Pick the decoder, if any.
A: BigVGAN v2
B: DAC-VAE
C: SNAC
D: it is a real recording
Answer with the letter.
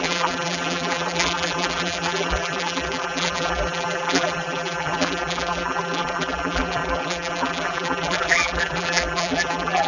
A